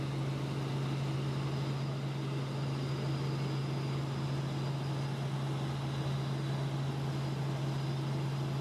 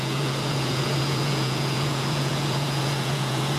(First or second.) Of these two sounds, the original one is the first